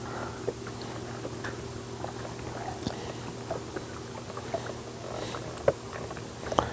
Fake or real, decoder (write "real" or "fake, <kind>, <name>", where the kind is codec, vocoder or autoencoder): real